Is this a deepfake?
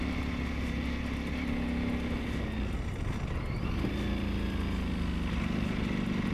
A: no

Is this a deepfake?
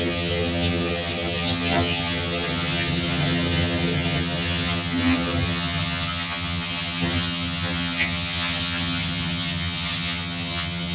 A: yes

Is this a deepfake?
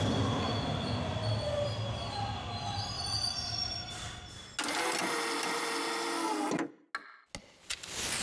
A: no